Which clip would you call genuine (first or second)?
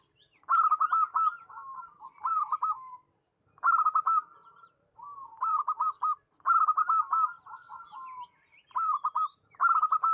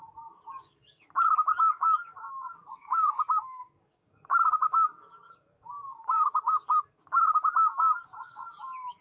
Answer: first